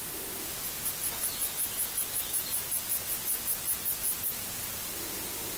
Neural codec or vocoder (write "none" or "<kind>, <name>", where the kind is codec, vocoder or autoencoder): none